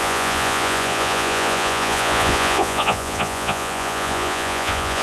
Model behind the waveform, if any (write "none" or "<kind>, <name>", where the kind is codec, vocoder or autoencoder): vocoder, Vocos